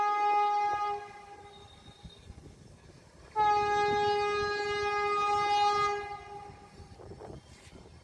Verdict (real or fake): real